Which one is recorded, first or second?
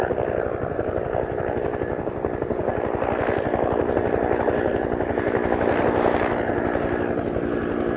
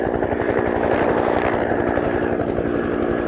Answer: first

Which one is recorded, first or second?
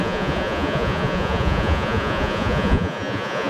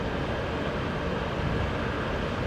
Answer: second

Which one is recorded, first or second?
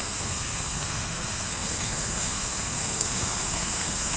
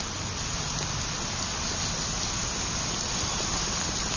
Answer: second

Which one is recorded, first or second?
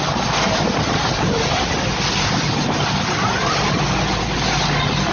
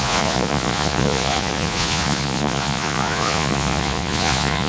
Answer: first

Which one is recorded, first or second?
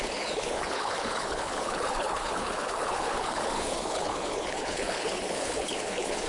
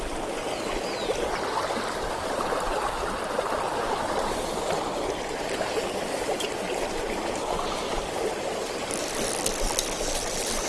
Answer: second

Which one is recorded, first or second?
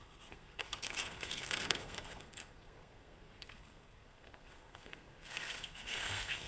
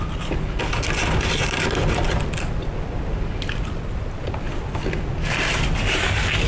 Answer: second